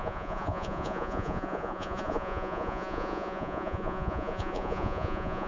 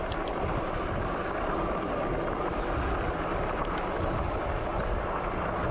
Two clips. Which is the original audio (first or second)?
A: second